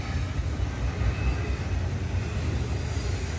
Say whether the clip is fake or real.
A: real